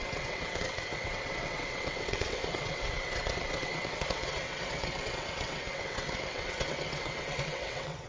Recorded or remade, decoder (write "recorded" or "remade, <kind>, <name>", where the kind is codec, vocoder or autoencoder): remade, vocoder, WaveNeXt